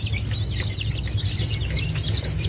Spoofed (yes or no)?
no